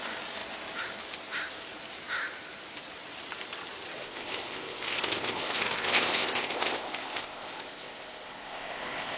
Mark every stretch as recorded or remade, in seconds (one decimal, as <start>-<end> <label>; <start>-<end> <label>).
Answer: 0.0-4.0 recorded; 4.0-9.2 remade